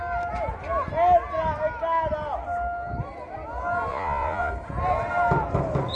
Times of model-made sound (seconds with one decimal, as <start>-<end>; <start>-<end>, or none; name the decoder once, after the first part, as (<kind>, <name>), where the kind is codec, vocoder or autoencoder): 3.9-4.5 (vocoder, Vocos)